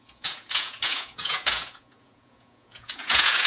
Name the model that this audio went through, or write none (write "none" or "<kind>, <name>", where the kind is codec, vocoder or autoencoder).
vocoder, Vocos